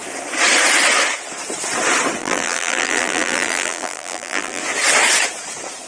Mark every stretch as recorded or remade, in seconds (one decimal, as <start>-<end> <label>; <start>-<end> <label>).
0.0-2.2 recorded; 2.2-4.6 remade; 4.6-5.9 recorded